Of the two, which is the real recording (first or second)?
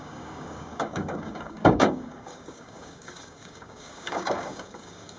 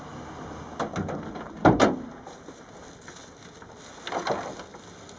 second